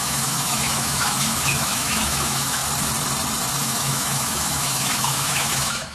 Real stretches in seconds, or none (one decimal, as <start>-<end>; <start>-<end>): 2.6-3.6